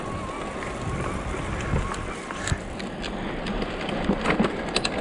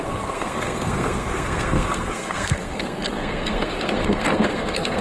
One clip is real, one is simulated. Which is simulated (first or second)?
second